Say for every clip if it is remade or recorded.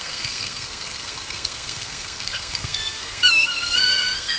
remade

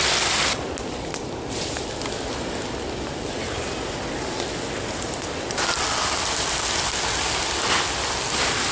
recorded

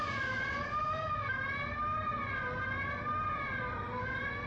recorded